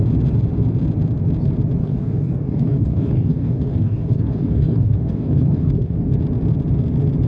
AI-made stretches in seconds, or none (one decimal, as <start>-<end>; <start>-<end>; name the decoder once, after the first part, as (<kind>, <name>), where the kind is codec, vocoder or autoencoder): 1.8-6.2 (codec, DAC)